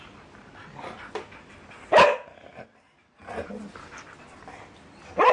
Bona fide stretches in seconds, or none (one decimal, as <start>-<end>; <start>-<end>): 0.0-2.5; 4.2-5.3